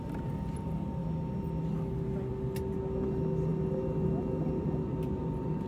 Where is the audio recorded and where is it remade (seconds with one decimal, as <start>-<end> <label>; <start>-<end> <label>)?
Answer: 0.0-5.7 recorded